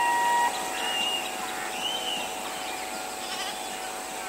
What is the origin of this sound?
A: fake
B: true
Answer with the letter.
B